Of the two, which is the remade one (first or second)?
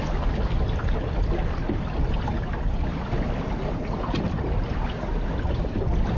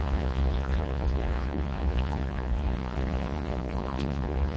second